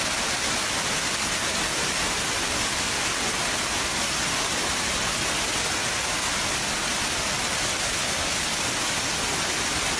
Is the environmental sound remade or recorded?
recorded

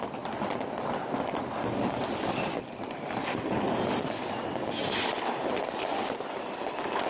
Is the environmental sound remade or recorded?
recorded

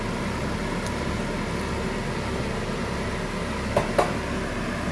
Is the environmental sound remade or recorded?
recorded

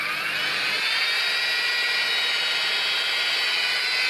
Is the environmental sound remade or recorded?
recorded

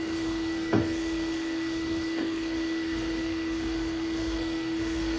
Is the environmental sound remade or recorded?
remade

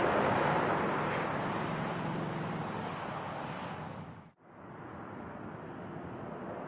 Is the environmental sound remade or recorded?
recorded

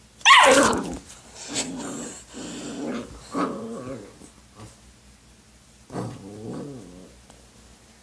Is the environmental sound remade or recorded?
recorded